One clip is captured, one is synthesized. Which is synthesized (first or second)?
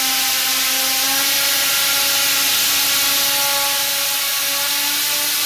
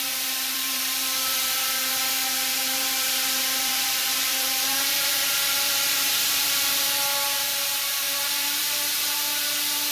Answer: second